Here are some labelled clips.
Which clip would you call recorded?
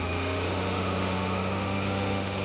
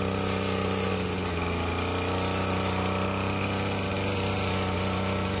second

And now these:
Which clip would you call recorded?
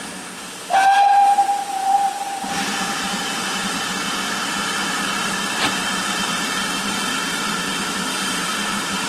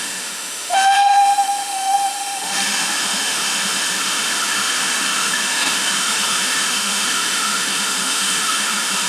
first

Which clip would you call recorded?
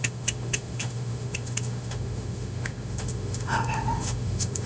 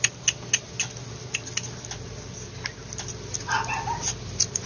second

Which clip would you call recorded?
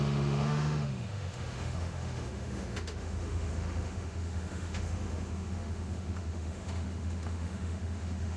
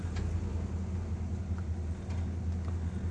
second